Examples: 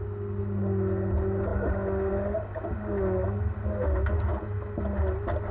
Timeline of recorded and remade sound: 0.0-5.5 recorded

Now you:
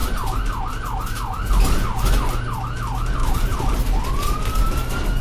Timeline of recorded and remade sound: 0.0-3.2 recorded; 3.2-3.8 remade; 3.8-5.2 recorded